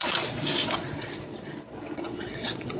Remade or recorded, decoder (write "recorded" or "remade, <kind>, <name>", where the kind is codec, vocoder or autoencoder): remade, vocoder, Vocos